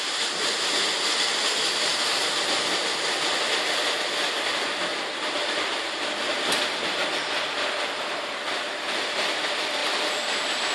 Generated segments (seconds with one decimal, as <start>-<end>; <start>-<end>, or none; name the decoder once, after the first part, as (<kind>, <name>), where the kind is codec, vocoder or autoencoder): 9.8-10.7 (vocoder, BigVGAN v2)